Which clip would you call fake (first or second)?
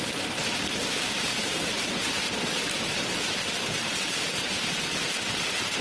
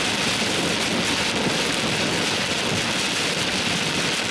first